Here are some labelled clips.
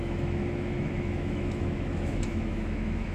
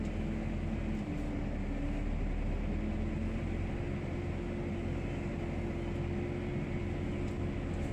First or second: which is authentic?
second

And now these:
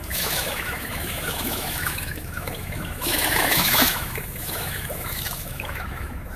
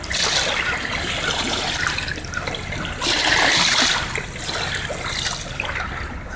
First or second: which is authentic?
second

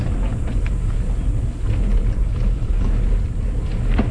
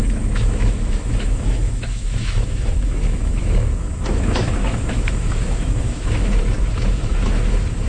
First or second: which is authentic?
first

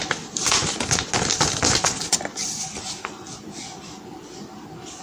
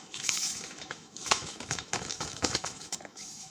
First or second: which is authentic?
first